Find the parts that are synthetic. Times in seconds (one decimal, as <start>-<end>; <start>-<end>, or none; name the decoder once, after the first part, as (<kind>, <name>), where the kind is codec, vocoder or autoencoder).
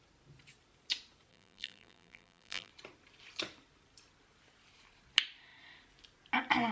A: 1.3-2.7 (vocoder, BigVGAN v2)